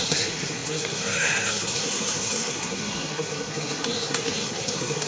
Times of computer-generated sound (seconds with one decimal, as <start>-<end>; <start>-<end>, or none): 0.0-5.1